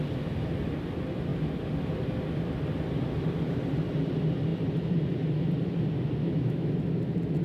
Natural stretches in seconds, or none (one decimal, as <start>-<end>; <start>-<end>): 0.0-6.2; 6.7-7.4